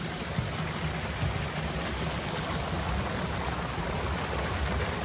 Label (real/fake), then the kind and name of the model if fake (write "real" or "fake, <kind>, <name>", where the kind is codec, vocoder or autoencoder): real